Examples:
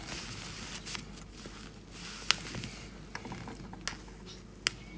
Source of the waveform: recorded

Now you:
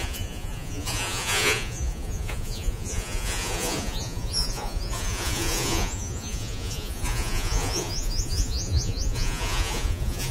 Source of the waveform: remade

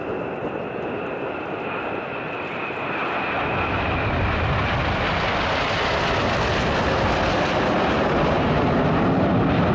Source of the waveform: recorded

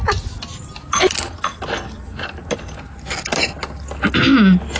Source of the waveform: recorded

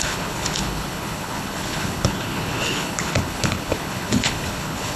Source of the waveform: remade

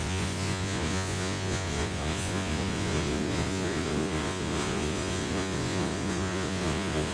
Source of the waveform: remade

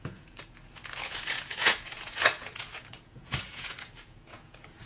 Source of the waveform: remade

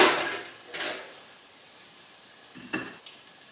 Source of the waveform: recorded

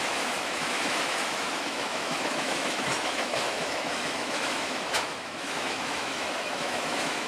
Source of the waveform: remade